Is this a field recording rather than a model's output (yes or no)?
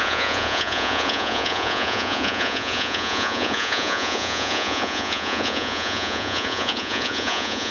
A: no